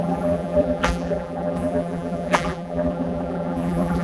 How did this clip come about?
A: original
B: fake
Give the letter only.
B